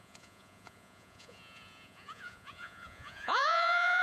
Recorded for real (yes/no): no